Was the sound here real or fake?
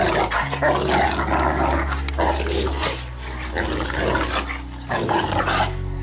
real